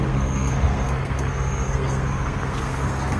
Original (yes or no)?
no